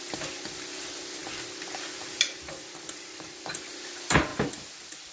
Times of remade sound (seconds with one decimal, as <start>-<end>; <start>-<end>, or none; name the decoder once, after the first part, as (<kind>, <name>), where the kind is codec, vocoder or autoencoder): none